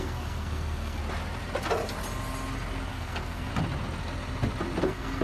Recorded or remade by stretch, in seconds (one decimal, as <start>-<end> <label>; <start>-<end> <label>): 0.0-1.0 remade; 1.0-2.9 recorded; 2.9-3.5 remade; 3.5-4.8 recorded; 4.8-5.2 remade